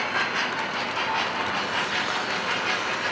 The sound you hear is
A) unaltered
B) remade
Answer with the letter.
A